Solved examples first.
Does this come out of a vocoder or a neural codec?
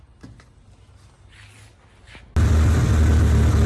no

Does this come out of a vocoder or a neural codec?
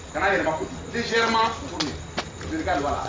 no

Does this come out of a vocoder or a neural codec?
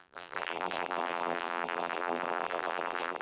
yes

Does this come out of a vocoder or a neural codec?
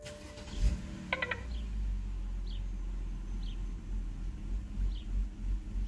no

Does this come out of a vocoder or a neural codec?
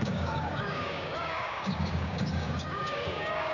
yes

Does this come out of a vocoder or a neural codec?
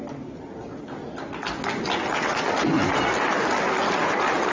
no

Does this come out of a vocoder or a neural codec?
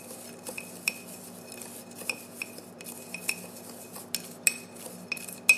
no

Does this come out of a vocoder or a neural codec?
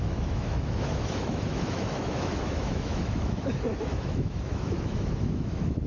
yes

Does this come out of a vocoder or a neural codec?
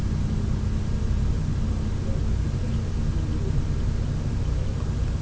no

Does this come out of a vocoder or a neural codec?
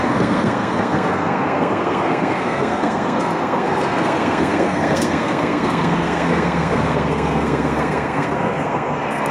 yes